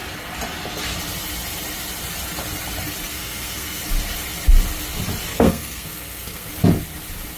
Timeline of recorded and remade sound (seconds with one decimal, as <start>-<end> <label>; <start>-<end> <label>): 0.0-3.1 recorded; 3.1-3.8 remade; 3.8-5.3 recorded; 5.3-6.5 remade; 6.5-7.4 recorded